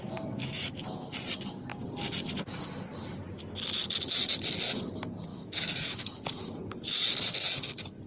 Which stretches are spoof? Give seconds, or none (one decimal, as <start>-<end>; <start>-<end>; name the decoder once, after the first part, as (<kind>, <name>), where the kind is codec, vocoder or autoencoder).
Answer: 0.4-1.1 (autoencoder, DAC-VAE); 5.3-6.1